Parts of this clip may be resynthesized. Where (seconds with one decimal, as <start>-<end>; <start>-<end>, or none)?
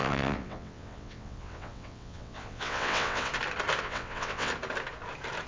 0.0-3.3; 3.8-4.5